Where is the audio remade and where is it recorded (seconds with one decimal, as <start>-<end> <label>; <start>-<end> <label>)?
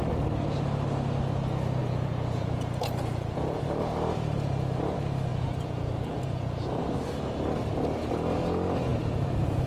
0.0-1.8 recorded; 1.8-3.6 remade; 3.6-5.3 recorded; 5.3-6.8 remade; 6.8-8.9 recorded; 8.9-9.7 remade